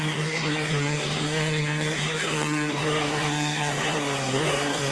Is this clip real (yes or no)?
no